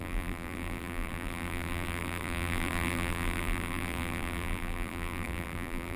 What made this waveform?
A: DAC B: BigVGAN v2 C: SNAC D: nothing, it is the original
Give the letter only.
B